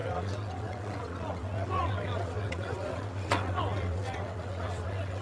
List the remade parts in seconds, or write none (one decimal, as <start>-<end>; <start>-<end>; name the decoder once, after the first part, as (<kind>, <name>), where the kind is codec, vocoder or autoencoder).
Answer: 0.0-5.2 (vocoder, WaveNeXt)